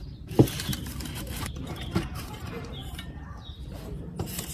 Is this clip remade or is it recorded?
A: remade